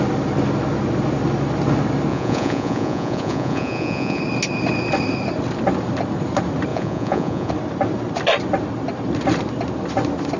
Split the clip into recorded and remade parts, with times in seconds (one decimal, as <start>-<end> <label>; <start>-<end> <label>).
0.0-2.1 recorded; 2.1-4.2 remade; 4.2-6.7 recorded; 6.7-7.5 remade; 7.5-10.4 recorded